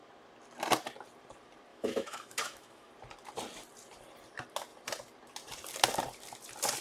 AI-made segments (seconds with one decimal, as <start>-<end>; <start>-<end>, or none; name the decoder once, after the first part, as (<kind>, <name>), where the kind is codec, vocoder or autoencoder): 1.7-2.9 (autoencoder, DAC-VAE)